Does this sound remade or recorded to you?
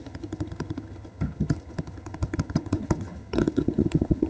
remade